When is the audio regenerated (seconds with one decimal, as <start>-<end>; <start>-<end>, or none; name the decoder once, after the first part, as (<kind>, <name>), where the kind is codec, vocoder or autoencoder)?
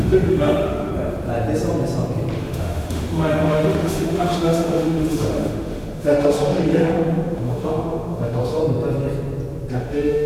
0.0-0.9 (autoencoder, DAC-VAE); 2.4-8.6; 9.7-10.3